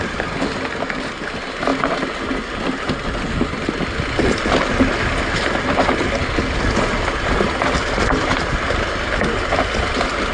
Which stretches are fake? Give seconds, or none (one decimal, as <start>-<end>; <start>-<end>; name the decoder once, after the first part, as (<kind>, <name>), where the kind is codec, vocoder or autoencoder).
none